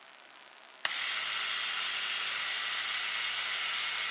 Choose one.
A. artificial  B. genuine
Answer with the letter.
B